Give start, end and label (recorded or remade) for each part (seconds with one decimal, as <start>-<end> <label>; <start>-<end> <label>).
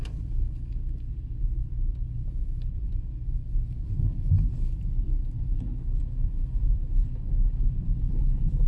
0.0-1.6 recorded; 1.6-3.5 remade; 3.5-7.9 recorded; 7.9-8.7 remade